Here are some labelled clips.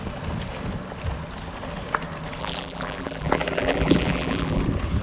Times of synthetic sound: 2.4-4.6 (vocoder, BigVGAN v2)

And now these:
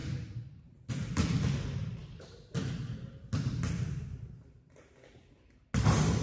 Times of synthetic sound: none

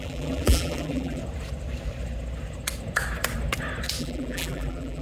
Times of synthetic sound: 0.0-1.2 (vocoder, BigVGAN v2); 4.0-5.0

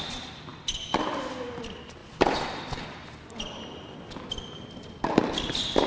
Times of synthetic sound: 2.0-3.6 (vocoder, BigVGAN v2)

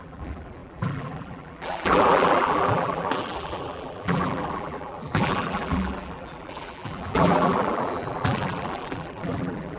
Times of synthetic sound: 0.0-9.8 (vocoder, BigVGAN v2)